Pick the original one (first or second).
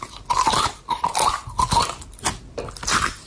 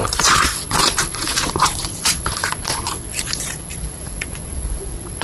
first